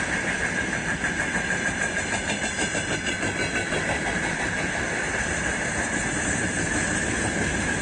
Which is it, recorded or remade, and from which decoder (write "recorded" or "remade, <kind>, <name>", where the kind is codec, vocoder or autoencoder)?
recorded